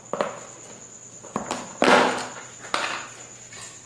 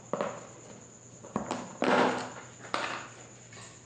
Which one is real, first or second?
first